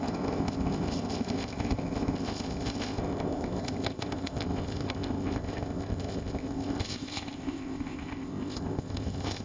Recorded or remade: remade